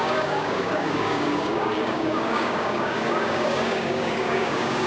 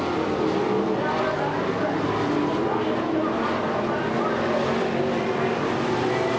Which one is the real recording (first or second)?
second